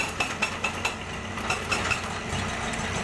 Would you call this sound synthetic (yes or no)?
no